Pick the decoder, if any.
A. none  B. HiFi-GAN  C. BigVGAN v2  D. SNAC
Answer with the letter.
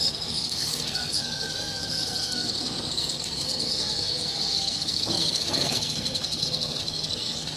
D